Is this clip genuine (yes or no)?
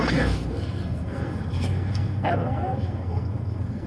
no